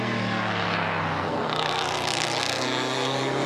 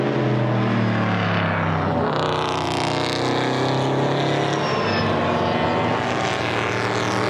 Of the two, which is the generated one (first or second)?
first